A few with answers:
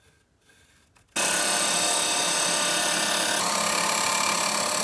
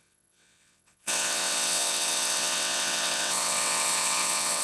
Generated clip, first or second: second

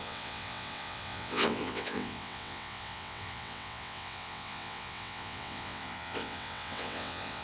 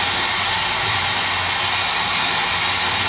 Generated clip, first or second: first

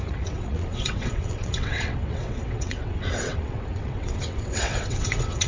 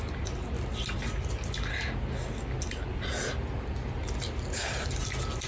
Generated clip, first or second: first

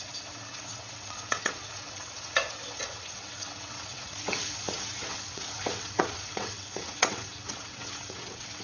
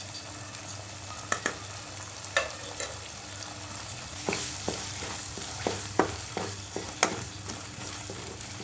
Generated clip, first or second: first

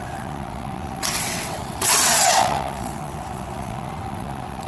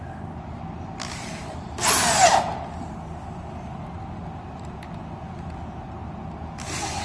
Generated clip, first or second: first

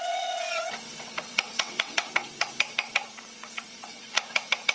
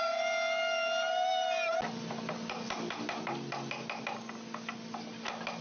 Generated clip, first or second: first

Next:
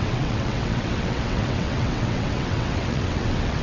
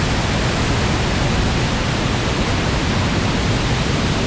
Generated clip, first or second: first